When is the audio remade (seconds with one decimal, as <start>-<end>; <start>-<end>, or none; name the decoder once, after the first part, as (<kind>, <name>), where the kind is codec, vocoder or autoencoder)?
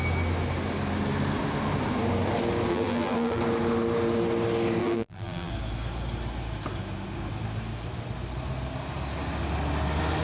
2.7-3.4 (vocoder, BigVGAN v2); 4.8-5.5